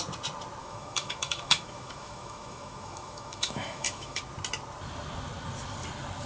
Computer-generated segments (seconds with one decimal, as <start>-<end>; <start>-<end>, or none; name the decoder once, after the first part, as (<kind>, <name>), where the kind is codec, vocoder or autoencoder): 0.6-4.2 (autoencoder, DAC-VAE)